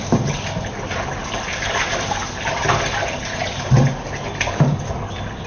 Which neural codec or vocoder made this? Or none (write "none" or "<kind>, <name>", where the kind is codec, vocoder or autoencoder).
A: none